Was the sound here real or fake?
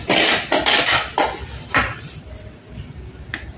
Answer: real